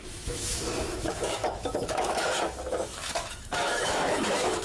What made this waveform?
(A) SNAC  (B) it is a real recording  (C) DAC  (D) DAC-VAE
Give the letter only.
D